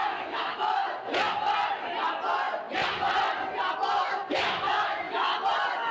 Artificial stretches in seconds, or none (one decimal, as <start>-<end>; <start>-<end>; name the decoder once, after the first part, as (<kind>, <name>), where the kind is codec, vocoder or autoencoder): 0.0-0.8 (autoencoder, DAC-VAE); 4.3-5.3